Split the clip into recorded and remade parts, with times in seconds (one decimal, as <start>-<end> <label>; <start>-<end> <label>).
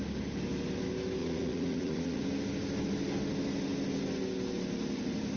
0.0-1.2 recorded; 1.2-2.2 remade; 2.2-5.4 recorded